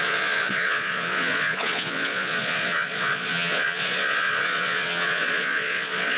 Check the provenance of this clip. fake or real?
fake